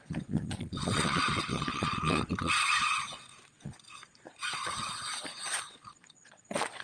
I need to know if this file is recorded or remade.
remade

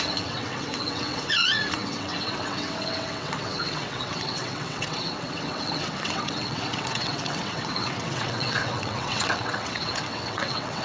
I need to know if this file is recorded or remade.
remade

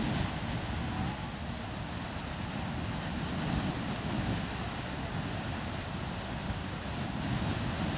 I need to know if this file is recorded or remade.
recorded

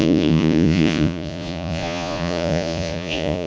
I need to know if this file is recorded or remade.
remade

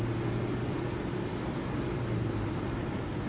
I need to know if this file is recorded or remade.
recorded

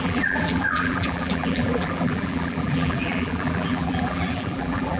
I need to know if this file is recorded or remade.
remade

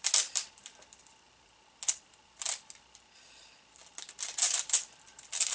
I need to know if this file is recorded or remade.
recorded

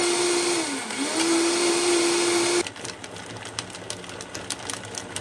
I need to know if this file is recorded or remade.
recorded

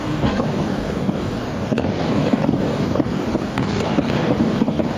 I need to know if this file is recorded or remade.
remade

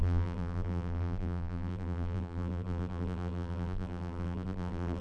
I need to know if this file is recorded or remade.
remade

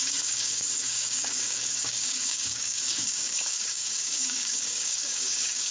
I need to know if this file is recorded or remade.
remade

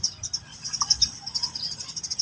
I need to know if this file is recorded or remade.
recorded